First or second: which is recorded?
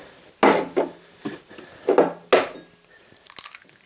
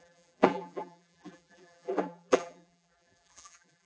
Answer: first